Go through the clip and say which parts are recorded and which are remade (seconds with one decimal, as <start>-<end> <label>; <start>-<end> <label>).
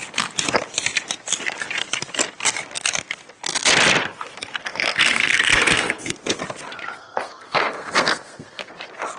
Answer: 0.0-4.6 recorded; 4.6-6.4 remade; 6.4-7.0 recorded; 7.0-8.7 remade; 8.7-9.2 recorded